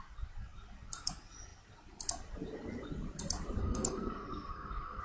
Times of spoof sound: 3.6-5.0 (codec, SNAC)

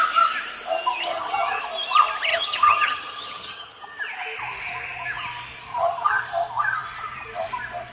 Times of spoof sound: 1.1-1.6 (vocoder, HiFi-GAN); 2.3-4.0; 5.7-6.2